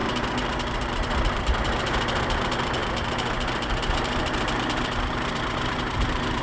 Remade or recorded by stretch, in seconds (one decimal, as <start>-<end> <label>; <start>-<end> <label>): 0.0-6.4 remade